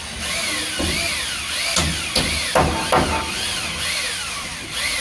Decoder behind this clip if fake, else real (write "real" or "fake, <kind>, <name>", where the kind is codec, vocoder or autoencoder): real